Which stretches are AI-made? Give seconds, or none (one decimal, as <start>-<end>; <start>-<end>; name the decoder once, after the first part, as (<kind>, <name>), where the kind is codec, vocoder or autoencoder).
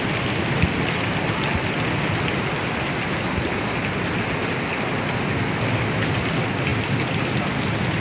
none